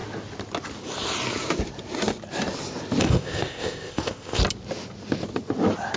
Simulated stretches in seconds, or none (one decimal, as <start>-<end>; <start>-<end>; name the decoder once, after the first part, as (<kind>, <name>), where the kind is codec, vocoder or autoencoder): 3.0-4.4 (codec, ZipCodec)